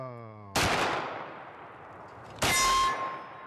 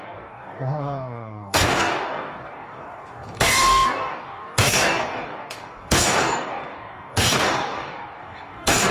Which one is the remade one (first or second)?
second